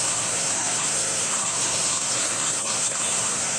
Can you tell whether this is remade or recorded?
remade